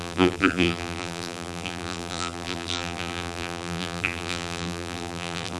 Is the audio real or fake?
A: fake